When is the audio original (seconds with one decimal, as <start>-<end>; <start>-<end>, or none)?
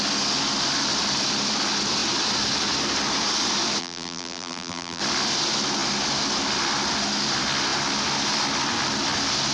0.0-3.8; 5.0-9.5